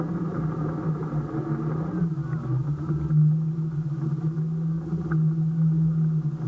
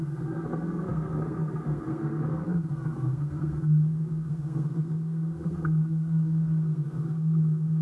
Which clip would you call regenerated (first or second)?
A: second